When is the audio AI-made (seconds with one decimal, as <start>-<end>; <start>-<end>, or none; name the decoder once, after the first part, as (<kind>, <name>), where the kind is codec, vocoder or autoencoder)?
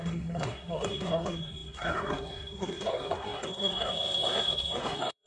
0.0-5.3 (codec, SNAC)